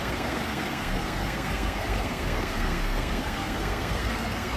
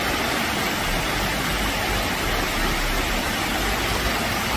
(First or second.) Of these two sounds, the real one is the second